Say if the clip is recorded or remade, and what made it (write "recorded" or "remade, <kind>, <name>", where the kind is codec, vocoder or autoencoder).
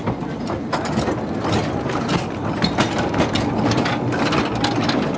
recorded